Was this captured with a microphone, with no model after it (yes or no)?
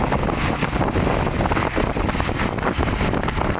yes